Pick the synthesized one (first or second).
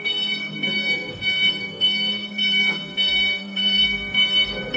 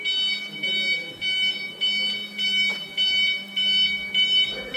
first